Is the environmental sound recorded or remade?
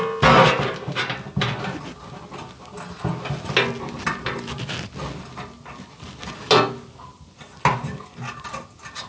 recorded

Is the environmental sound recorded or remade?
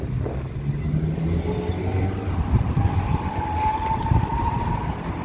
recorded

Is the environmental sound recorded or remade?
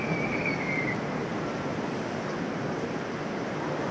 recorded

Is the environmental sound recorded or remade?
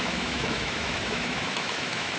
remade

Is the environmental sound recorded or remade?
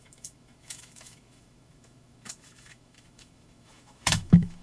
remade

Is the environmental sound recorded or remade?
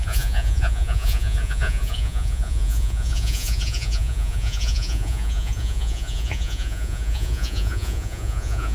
remade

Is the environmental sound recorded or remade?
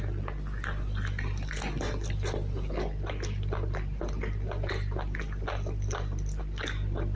recorded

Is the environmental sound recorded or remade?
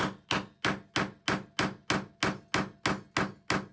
recorded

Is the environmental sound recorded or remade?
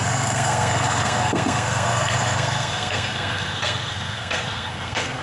remade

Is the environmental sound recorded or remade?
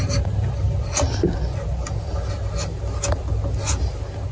recorded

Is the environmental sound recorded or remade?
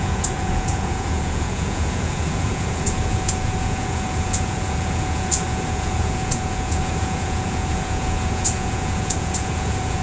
remade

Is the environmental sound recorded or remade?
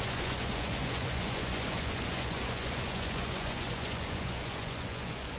remade